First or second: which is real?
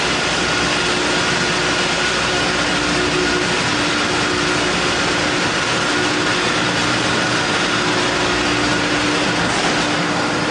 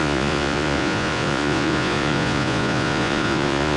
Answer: first